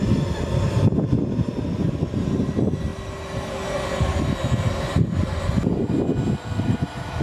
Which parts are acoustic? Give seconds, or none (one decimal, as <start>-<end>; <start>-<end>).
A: 0.0-7.2